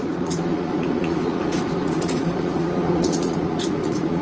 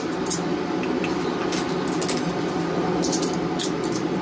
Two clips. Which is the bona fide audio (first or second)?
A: second